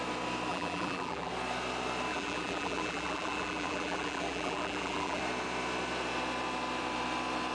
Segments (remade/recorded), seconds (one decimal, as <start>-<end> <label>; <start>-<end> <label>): 0.0-0.5 recorded; 0.5-1.3 remade; 1.3-2.1 recorded; 2.1-5.2 remade; 5.2-7.5 recorded